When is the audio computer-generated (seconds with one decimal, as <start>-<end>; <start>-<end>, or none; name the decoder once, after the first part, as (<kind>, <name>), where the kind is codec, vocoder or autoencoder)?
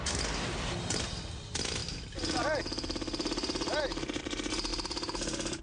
none